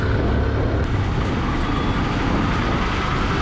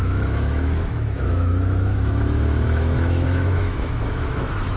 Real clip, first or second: first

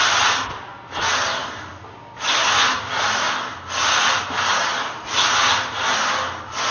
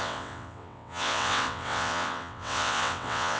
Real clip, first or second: first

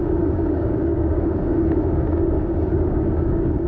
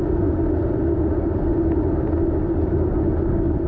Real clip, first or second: second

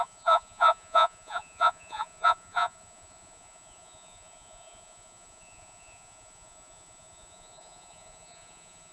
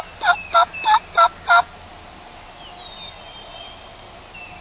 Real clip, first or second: second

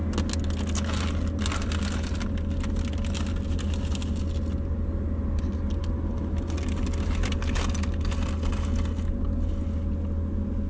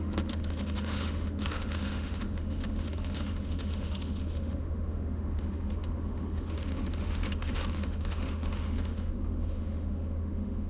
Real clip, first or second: first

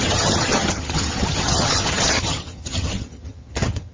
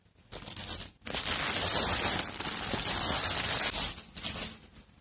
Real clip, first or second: second